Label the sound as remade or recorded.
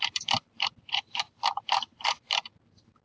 remade